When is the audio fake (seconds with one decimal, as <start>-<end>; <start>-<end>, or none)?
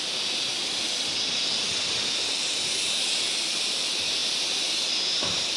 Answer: none